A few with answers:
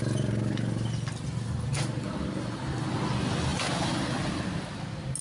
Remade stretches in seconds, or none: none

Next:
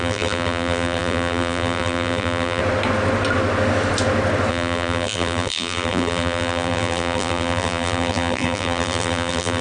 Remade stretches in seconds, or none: 0.0-2.6 (vocoder, BigVGAN v2); 4.5-9.6

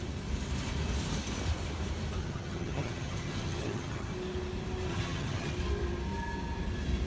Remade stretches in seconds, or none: 2.2-4.1 (vocoder, HiFi-GAN); 4.9-5.5